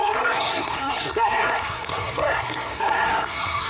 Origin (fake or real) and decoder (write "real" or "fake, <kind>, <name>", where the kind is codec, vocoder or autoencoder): fake, codec, SNAC